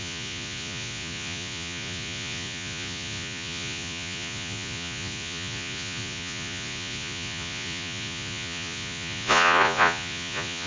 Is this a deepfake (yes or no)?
yes